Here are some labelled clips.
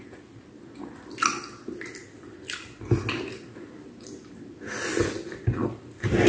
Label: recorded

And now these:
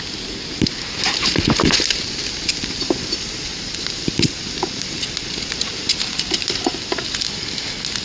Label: recorded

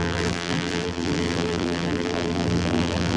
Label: remade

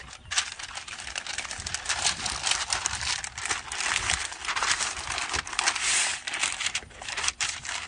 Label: recorded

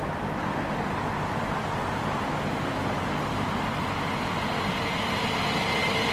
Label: recorded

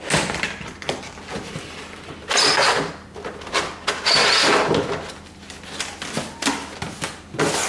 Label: recorded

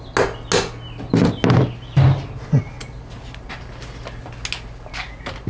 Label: recorded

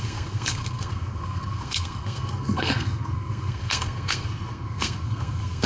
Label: remade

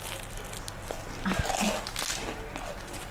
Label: recorded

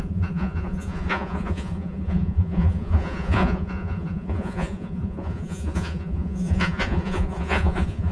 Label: remade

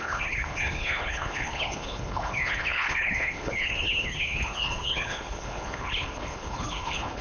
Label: remade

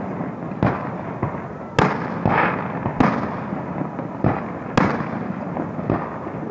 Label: recorded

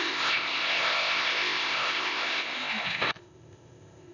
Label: remade